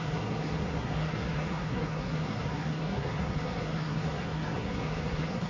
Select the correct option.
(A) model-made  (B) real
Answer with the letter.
A